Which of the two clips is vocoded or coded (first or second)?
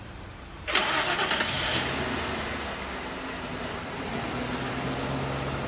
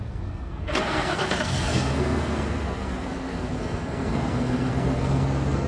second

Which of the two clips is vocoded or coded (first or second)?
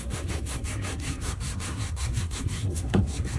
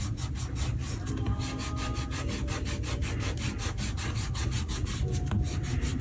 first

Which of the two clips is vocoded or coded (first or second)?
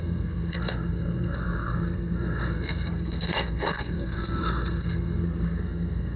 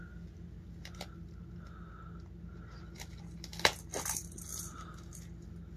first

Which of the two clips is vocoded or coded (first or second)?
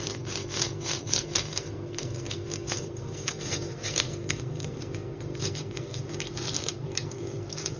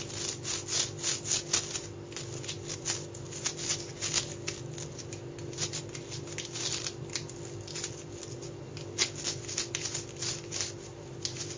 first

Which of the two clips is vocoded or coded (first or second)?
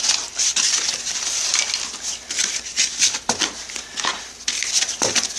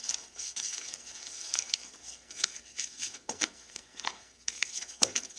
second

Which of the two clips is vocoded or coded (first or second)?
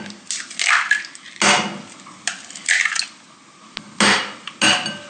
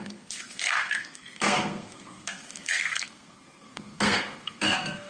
second